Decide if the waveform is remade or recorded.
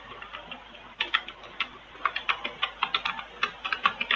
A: recorded